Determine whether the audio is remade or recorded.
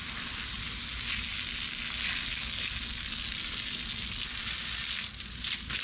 recorded